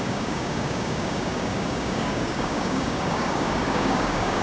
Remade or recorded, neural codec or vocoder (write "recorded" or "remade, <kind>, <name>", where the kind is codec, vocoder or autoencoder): remade, codec, DAC